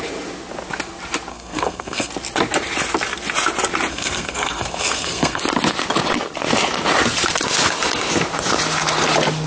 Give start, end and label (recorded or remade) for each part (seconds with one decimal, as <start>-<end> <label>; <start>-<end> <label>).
0.0-1.3 recorded; 1.3-2.1 remade; 2.1-3.9 recorded; 3.9-5.4 remade; 5.4-9.5 recorded